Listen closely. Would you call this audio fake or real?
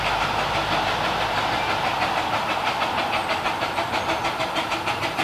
real